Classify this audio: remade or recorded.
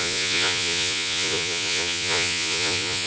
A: remade